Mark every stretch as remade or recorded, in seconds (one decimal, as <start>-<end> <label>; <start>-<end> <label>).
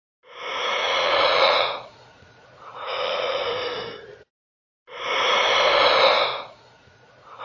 0.0-0.8 recorded; 0.8-3.6 remade; 3.6-6.3 recorded; 6.3-7.4 remade